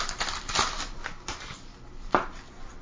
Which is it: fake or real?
real